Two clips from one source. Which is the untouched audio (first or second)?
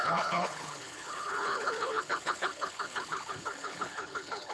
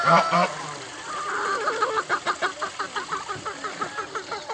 second